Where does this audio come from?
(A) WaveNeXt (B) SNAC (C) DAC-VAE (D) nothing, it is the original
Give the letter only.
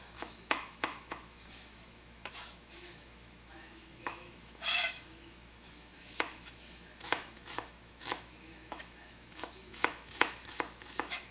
C